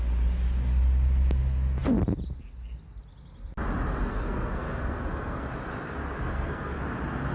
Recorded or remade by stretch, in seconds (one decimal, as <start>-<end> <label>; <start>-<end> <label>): 0.0-4.1 recorded; 4.1-5.5 remade; 5.5-6.3 recorded; 6.3-6.8 remade; 6.8-7.3 recorded